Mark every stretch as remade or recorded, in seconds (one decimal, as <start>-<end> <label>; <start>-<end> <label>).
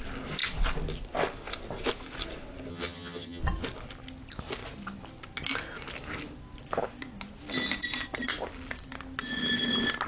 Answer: 0.0-2.7 recorded; 2.7-3.4 remade; 3.4-10.1 recorded